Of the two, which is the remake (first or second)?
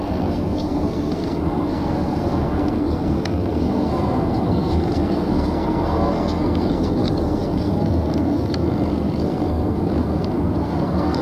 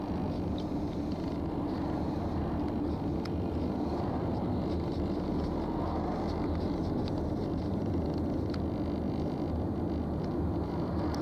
first